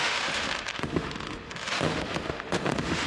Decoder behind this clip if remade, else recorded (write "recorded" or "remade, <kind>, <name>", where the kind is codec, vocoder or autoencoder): remade, autoencoder, DAC-VAE